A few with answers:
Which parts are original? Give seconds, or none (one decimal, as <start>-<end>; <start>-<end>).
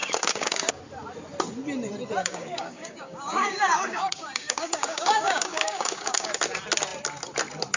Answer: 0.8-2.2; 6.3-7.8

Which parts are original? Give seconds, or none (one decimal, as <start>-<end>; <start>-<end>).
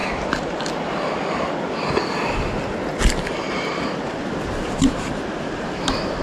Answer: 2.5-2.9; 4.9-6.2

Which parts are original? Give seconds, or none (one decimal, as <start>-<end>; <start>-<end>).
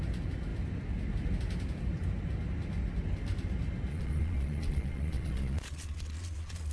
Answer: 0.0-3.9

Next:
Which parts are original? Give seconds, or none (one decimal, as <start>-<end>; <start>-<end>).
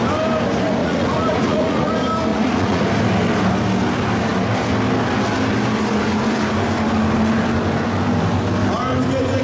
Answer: 0.0-0.8; 1.9-2.3; 2.8-9.4